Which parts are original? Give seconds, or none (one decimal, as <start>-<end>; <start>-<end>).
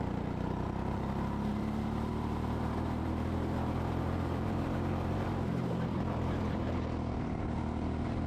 none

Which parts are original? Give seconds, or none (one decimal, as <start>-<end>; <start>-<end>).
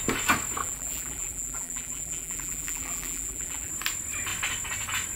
0.0-0.6; 3.7-5.2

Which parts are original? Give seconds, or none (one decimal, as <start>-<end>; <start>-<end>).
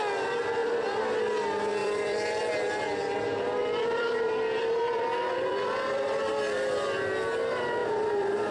0.0-1.8; 2.4-3.6; 6.3-7.8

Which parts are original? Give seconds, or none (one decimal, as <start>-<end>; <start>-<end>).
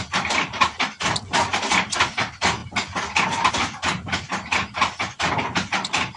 0.0-6.2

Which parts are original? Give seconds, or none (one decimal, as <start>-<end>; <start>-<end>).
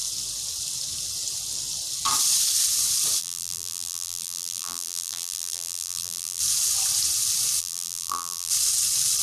0.0-3.2; 6.4-7.6; 8.5-9.2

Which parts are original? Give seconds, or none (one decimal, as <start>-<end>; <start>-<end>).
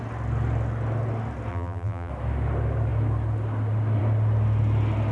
0.0-1.5; 2.1-5.1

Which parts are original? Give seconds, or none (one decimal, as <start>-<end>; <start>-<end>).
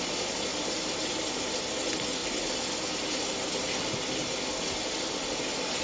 0.0-0.5; 1.1-5.8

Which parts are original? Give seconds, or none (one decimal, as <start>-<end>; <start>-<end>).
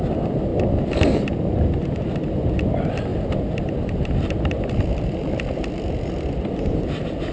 0.5-1.8